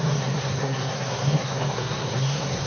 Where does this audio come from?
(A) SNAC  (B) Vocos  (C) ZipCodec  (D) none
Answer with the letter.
A